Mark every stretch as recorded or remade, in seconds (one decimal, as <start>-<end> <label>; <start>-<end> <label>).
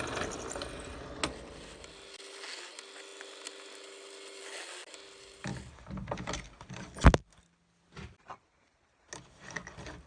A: 0.0-10.1 recorded